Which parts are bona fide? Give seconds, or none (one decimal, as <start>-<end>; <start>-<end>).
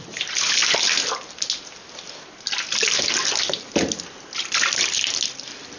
0.0-5.8